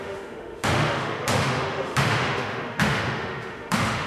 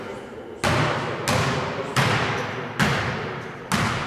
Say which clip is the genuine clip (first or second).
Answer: second